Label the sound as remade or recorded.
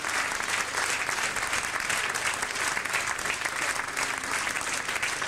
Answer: recorded